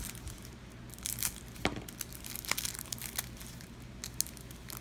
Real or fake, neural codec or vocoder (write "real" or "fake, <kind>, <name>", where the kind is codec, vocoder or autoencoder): real